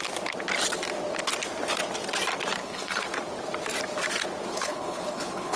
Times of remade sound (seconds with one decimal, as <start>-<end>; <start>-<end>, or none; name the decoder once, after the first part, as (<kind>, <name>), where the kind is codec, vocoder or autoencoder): 2.6-3.1 (codec, HILCodec); 4.5-5.6